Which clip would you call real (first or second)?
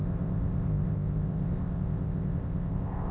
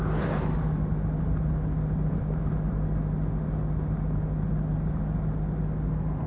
second